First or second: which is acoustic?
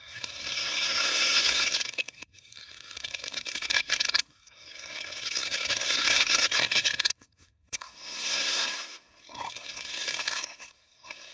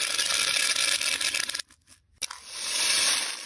second